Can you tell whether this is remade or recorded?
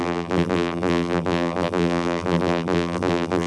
remade